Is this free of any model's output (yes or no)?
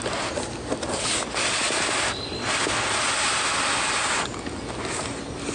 yes